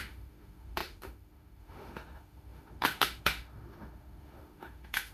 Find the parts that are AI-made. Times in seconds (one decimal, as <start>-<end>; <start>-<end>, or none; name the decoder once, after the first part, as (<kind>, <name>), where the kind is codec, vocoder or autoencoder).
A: 0.0-5.1 (autoencoder, DAC-VAE)